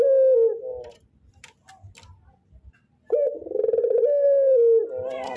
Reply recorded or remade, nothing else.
recorded